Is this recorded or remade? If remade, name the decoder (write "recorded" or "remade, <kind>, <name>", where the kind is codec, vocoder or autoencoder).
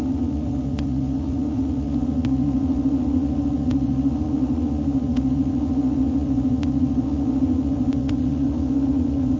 remade, vocoder, Vocos